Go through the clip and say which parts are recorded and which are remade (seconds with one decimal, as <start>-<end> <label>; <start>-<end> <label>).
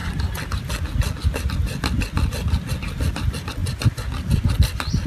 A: 0.0-3.6 recorded; 3.6-5.1 remade